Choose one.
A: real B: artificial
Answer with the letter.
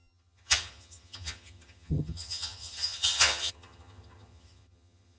B